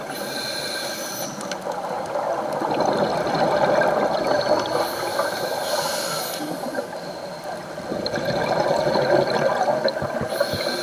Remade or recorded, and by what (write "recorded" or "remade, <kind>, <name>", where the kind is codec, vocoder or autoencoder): recorded